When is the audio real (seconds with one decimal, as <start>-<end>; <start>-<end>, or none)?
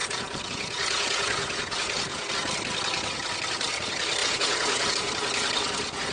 2.3-4.2; 4.9-6.1